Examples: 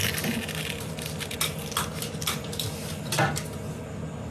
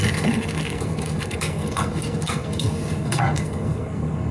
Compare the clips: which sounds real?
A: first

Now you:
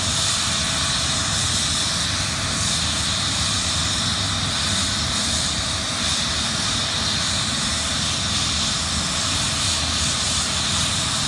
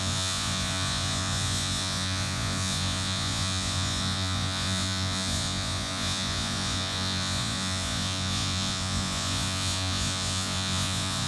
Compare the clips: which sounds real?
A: first